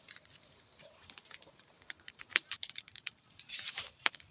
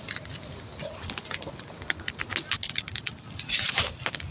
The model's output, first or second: first